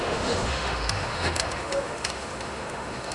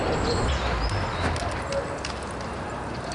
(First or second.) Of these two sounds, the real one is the second